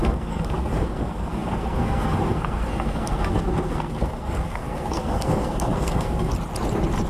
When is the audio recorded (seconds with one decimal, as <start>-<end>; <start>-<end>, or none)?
6.3-7.1